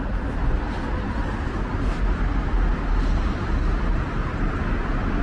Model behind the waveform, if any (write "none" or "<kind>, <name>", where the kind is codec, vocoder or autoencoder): none